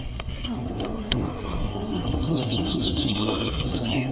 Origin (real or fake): fake